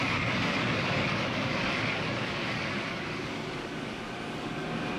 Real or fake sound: fake